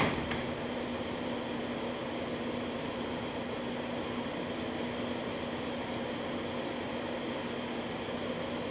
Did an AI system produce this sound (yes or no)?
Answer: no